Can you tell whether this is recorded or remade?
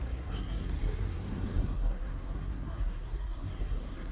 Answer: remade